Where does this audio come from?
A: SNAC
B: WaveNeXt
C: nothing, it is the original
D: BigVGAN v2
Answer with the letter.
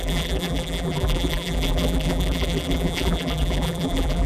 D